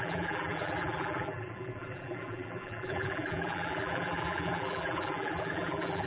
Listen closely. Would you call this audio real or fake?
fake